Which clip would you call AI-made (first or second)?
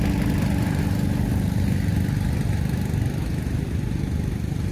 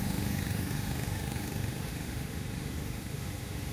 second